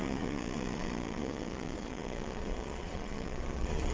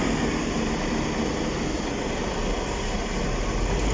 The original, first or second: second